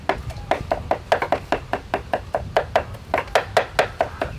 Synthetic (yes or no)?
no